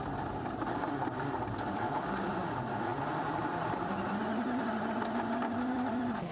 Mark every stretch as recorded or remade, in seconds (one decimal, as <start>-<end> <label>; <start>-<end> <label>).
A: 0.0-2.9 remade; 2.9-3.4 recorded; 3.4-6.3 remade